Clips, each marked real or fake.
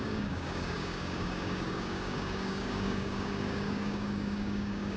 fake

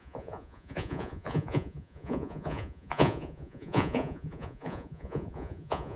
fake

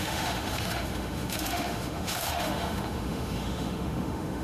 fake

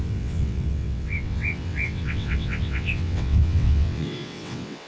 fake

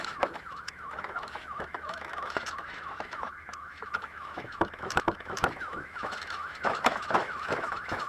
fake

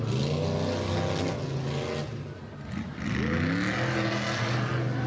real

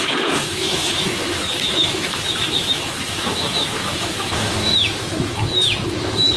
fake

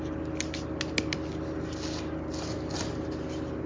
real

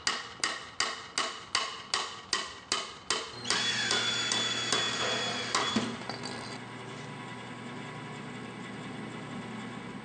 real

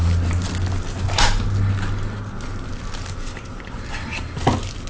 real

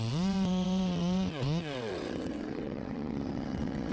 fake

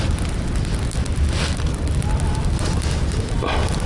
real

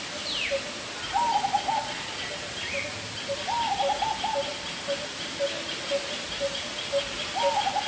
real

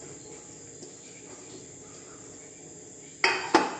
real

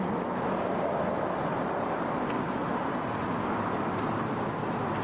real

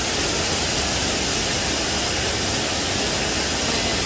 real